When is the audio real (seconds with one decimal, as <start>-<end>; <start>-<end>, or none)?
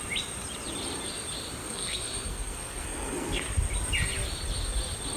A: 0.0-1.6; 3.4-5.2